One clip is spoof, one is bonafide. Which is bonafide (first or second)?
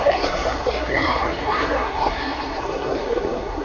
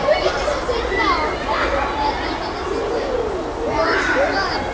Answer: second